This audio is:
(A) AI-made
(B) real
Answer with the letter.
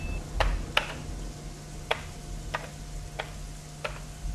B